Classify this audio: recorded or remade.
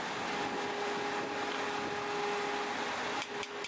recorded